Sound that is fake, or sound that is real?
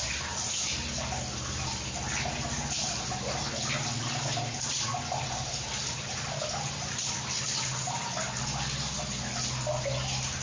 real